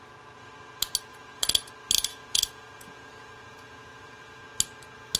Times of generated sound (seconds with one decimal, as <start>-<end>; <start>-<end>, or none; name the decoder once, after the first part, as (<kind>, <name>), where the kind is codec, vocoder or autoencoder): 1.1-1.7 (vocoder, Vocos); 2.1-4.4